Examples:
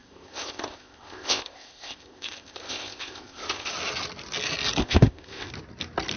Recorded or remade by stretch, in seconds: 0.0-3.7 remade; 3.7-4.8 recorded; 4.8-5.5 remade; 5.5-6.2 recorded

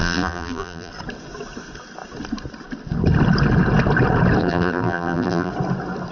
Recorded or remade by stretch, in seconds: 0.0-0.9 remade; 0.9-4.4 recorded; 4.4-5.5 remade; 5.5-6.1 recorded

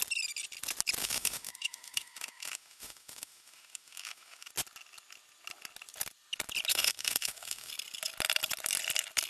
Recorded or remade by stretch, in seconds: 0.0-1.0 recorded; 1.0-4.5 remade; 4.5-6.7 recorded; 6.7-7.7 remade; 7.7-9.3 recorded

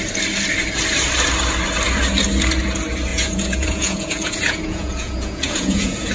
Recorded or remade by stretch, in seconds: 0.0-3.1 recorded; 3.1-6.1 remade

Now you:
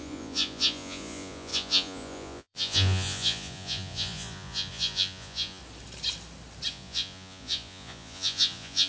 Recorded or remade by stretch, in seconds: 0.0-5.6 remade; 5.6-6.7 recorded; 6.7-8.9 remade

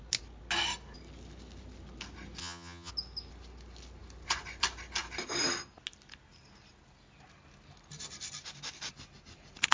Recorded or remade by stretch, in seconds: 0.0-2.4 recorded; 2.4-2.9 remade; 2.9-9.7 recorded